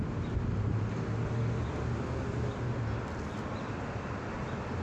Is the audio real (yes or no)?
yes